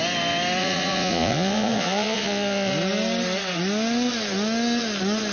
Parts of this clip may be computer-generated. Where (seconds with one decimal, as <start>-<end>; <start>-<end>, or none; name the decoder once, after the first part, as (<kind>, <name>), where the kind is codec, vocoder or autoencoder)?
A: 0.6-2.7 (vocoder, Vocos)